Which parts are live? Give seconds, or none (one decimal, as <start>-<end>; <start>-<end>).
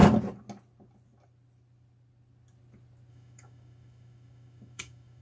0.0-3.1